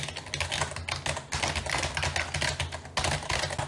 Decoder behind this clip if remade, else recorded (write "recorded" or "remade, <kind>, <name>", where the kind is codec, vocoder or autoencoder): recorded